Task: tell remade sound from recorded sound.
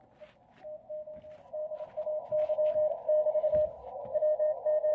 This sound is recorded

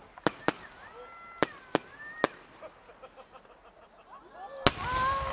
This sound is recorded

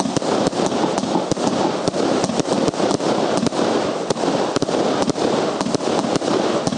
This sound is recorded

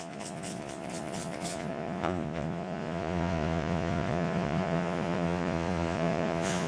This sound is remade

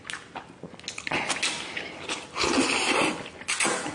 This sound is recorded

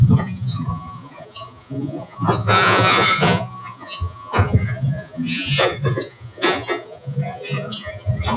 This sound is remade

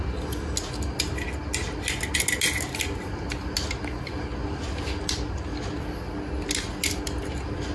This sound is recorded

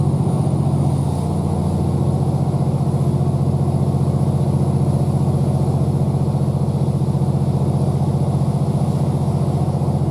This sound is recorded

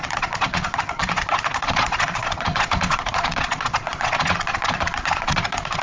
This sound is remade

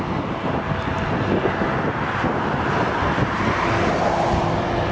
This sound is recorded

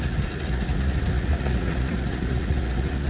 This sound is remade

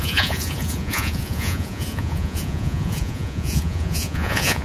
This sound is remade